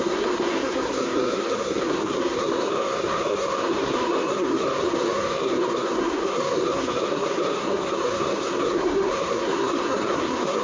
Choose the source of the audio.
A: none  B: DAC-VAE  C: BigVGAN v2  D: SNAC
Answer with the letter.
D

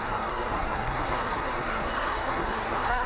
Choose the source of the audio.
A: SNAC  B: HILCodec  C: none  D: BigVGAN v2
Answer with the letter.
A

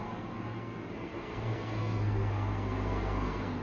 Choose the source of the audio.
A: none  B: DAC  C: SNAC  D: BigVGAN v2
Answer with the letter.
C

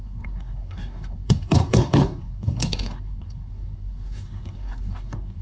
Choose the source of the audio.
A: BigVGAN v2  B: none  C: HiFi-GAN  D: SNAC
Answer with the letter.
D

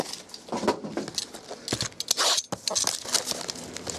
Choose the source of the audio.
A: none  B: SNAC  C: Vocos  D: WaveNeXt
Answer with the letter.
A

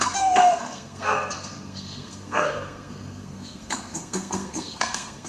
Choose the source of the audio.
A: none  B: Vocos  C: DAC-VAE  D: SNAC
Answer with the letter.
D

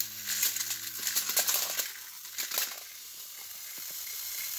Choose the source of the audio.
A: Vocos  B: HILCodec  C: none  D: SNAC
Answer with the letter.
C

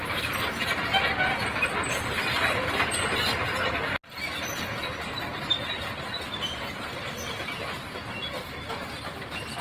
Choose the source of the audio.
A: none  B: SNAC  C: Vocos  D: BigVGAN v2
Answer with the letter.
A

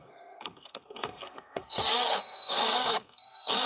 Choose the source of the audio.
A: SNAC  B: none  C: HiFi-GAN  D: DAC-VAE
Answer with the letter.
A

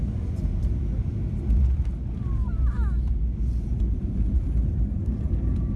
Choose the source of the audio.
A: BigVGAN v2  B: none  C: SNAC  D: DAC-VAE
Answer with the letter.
B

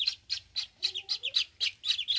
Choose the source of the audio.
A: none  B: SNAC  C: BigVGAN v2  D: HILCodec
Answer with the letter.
A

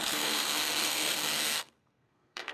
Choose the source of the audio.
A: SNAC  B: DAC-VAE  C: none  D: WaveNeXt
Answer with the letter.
A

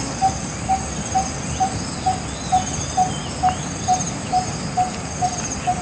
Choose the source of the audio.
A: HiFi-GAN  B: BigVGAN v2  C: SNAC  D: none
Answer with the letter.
D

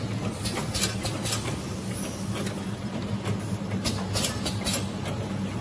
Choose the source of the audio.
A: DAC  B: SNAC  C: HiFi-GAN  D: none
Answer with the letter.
D